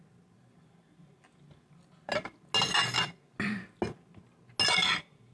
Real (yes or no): yes